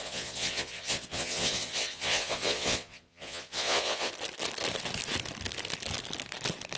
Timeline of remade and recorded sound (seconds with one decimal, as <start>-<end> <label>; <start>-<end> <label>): 0.0-4.1 remade; 4.1-6.8 recorded